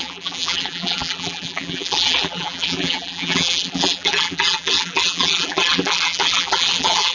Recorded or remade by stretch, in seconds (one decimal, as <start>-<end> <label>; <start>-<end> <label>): 0.0-7.1 remade